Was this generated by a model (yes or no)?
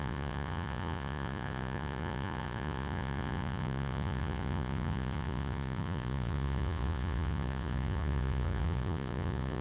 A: yes